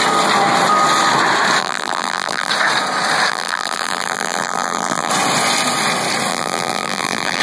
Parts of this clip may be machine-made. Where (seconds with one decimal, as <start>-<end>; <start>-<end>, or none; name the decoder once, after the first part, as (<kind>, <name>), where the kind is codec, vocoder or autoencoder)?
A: 1.6-2.5 (vocoder, BigVGAN v2); 3.3-5.1; 6.3-7.4